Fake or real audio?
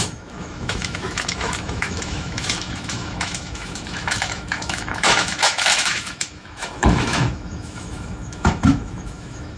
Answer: fake